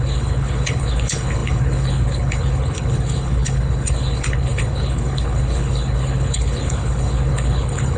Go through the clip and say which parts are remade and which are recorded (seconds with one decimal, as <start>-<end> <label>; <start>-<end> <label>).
0.0-8.0 remade